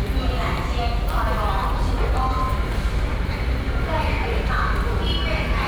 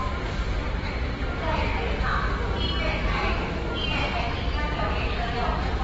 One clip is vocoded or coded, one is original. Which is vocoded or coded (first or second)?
second